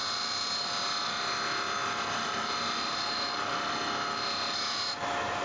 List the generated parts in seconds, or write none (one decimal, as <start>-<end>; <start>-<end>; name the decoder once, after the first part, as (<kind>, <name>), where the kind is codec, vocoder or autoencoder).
0.0-0.5 (vocoder, BigVGAN v2); 1.8-3.7